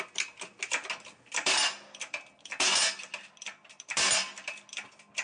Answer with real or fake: real